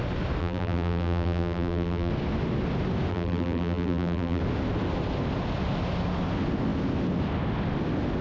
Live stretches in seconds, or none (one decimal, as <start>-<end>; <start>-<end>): 0.0-0.4; 2.1-3.1; 4.4-8.2